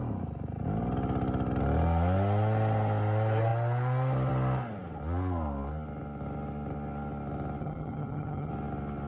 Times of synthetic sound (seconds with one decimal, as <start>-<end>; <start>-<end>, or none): 7.6-8.5